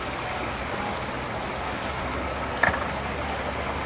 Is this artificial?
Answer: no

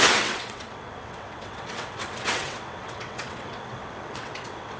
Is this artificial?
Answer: yes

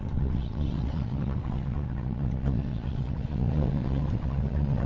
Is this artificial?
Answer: yes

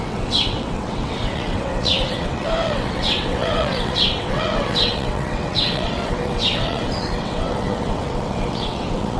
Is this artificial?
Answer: yes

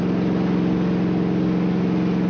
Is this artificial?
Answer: no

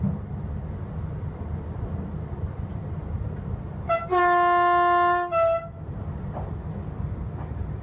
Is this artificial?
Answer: no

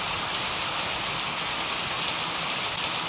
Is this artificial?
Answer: no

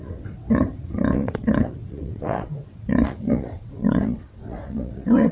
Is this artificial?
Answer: yes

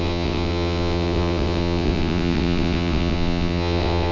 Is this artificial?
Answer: yes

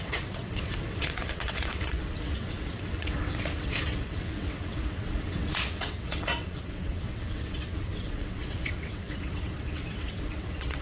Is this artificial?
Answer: yes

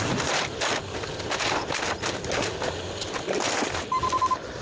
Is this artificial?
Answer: no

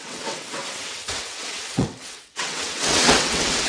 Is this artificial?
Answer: yes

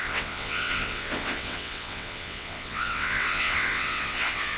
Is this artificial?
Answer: yes